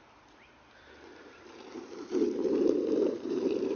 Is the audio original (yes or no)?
no